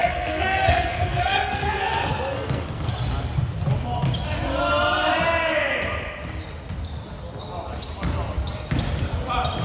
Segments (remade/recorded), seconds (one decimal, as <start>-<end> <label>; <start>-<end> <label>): 0.0-2.9 remade; 2.9-9.6 recorded